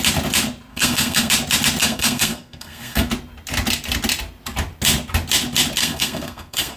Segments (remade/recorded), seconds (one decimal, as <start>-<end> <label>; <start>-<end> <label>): 0.0-0.7 recorded; 0.7-1.3 remade; 1.3-1.8 recorded; 1.8-3.1 remade; 3.1-5.8 recorded; 5.8-6.8 remade